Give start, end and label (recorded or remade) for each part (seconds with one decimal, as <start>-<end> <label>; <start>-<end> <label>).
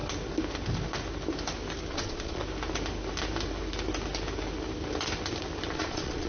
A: 0.0-1.9 recorded; 1.9-2.4 remade; 2.4-5.7 recorded; 5.7-6.3 remade